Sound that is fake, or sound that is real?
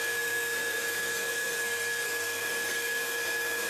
fake